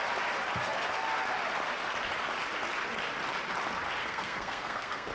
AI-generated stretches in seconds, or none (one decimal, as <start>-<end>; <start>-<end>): 4.0-5.1